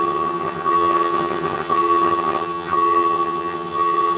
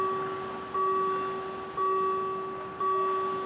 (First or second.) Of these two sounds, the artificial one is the first